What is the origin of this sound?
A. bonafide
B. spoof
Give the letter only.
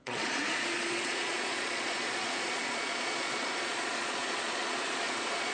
B